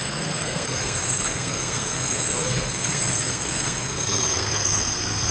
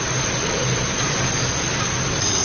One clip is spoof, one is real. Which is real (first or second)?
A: second